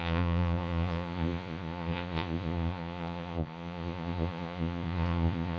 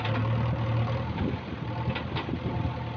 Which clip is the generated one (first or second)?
first